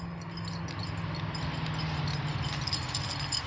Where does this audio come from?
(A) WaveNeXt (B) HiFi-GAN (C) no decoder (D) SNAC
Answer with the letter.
C